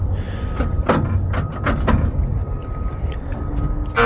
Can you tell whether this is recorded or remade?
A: recorded